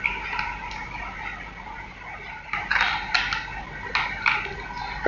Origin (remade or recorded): recorded